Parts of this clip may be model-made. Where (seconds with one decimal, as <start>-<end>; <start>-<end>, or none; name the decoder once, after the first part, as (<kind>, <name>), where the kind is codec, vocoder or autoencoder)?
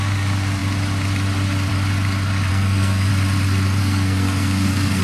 2.5-3.1 (codec, SNAC); 3.8-5.0